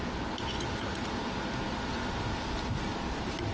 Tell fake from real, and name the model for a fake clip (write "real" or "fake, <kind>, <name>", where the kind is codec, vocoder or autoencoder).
real